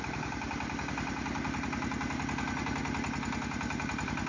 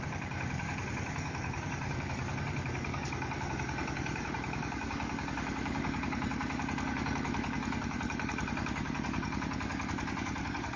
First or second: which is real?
first